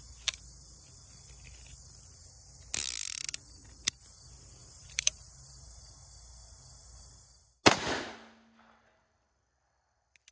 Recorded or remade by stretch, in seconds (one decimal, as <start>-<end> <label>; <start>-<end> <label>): 0.0-4.6 recorded; 4.6-5.8 remade; 5.8-10.3 recorded